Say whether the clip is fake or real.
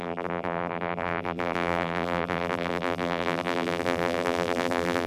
fake